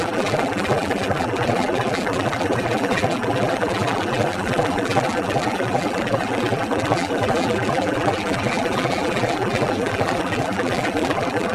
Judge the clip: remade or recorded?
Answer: remade